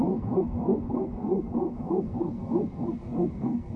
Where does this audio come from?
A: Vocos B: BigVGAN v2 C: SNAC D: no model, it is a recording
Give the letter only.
C